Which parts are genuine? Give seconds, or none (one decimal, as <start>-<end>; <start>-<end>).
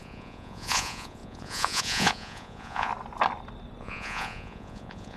2.9-3.8